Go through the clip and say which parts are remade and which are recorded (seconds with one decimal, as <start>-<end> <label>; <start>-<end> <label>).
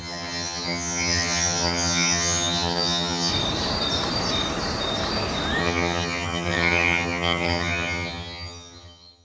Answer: 0.0-3.3 remade; 3.3-5.6 recorded; 5.6-9.2 remade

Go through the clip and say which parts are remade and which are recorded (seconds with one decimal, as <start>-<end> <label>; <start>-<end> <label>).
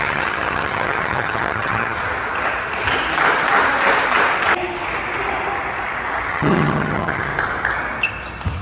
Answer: 0.0-2.0 remade; 2.0-6.3 recorded; 6.3-7.3 remade; 7.3-8.6 recorded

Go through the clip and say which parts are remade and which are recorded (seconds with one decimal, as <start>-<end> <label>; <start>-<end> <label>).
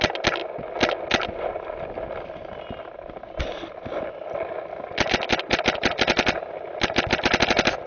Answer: 0.0-7.9 recorded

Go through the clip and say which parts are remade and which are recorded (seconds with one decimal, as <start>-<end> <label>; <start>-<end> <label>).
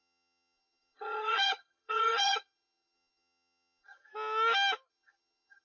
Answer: 0.0-4.1 remade; 4.1-4.9 recorded; 4.9-5.6 remade